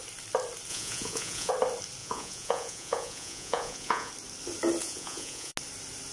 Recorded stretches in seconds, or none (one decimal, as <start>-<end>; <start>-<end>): 0.0-0.7; 1.5-2.0; 4.1-4.8; 5.5-6.1